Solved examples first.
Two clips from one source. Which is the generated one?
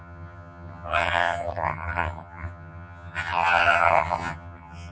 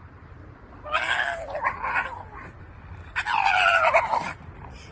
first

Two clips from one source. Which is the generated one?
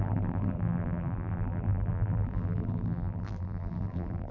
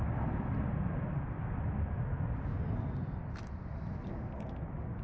first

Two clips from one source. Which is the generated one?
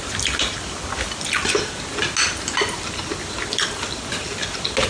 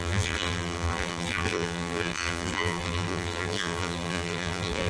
second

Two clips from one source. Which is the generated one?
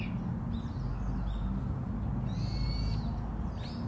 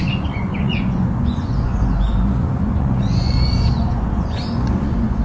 second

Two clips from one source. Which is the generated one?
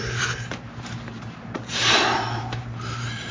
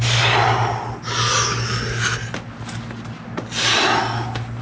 first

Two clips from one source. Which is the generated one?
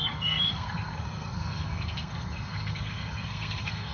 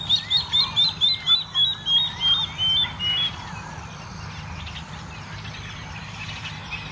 first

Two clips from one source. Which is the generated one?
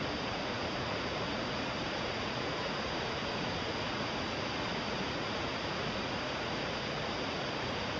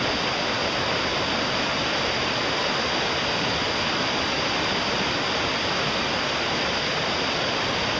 first